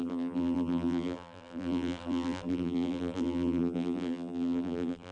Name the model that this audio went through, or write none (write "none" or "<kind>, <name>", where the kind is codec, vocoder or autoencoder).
vocoder, BigVGAN v2